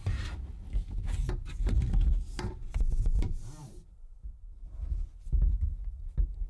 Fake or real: real